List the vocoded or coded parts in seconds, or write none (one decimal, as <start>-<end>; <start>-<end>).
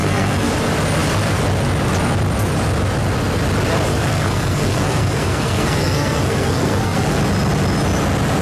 0.0-0.5; 3.9-7.2